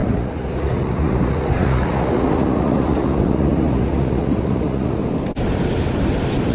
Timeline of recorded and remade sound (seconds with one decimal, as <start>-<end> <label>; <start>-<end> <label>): 0.0-5.0 remade; 5.0-6.5 recorded

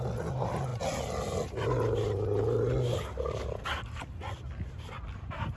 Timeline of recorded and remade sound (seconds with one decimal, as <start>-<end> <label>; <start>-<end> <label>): 0.0-5.6 recorded

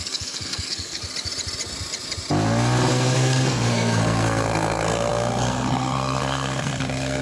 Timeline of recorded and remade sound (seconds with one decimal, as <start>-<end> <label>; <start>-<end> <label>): 0.0-1.0 remade; 1.0-2.9 recorded; 2.9-7.2 remade

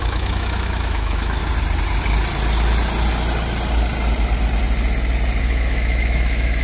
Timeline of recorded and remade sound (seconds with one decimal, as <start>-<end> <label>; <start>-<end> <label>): 0.0-1.4 remade; 1.4-5.4 recorded; 5.4-6.6 remade

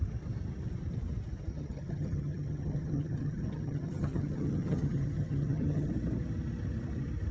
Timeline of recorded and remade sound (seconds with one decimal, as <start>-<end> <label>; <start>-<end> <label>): 0.0-1.5 recorded; 1.5-5.9 remade; 5.9-7.3 recorded

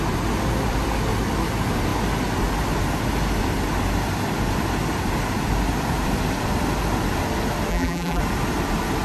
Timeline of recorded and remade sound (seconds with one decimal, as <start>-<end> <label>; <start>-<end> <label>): 0.0-7.7 recorded; 7.7-8.2 remade; 8.2-9.0 recorded

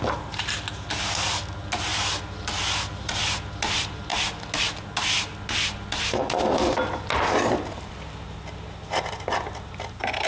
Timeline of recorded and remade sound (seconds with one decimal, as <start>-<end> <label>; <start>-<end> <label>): 0.0-10.3 recorded